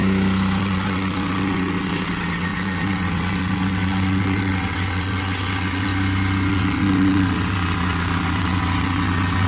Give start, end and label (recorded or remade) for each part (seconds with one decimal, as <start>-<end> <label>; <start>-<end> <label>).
0.0-0.6 recorded; 0.6-5.9 remade; 5.9-6.5 recorded; 6.5-9.5 remade